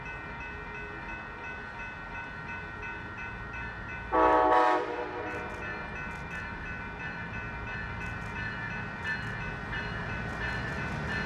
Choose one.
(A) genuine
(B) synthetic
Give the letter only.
A